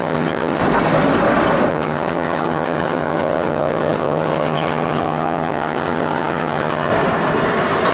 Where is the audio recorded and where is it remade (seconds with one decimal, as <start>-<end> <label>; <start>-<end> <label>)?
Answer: 0.0-0.6 remade; 0.6-1.7 recorded; 1.7-6.9 remade; 6.9-7.9 recorded